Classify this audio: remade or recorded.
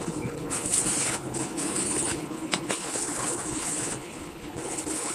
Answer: remade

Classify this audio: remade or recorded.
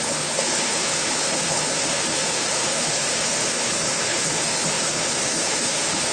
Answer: remade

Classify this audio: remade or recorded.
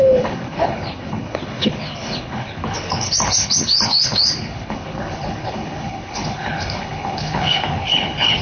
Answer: remade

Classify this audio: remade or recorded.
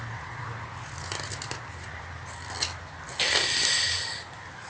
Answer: recorded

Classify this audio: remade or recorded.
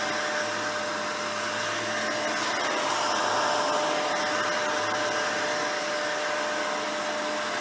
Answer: recorded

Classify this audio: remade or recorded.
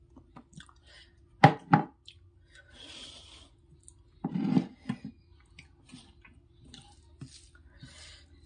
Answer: recorded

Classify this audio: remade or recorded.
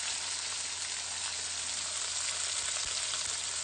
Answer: recorded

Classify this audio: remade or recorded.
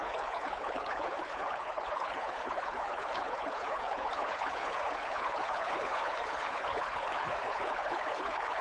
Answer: remade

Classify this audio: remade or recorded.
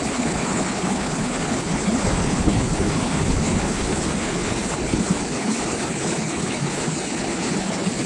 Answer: remade